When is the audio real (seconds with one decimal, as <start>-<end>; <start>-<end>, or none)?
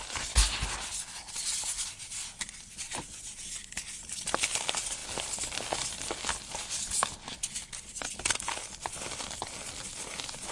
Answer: 0.0-10.5